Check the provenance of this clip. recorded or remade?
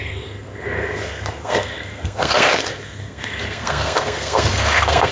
remade